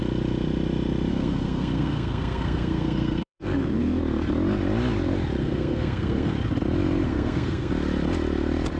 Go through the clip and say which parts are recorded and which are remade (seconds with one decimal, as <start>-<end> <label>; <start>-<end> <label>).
0.0-1.1 recorded; 1.1-4.0 remade; 4.0-5.4 recorded; 5.4-6.3 remade; 6.3-7.0 recorded; 7.0-7.7 remade; 7.7-8.8 recorded

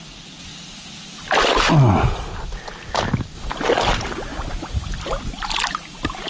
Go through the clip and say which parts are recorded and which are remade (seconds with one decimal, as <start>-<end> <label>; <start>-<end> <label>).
0.0-6.3 recorded